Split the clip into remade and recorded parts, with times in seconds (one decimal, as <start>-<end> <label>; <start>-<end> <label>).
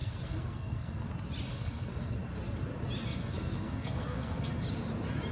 0.0-1.1 remade; 1.1-1.5 recorded; 1.5-2.2 remade; 2.2-3.1 recorded; 3.1-4.5 remade; 4.5-5.3 recorded